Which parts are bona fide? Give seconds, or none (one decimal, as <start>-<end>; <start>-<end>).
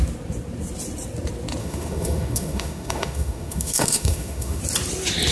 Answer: 0.0-1.6; 4.6-5.3